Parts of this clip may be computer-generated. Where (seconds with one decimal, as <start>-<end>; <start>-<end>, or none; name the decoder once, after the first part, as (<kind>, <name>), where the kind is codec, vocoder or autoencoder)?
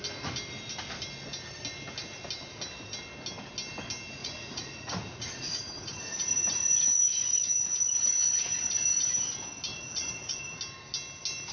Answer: 4.2-8.9 (vocoder, Vocos); 9.7-10.6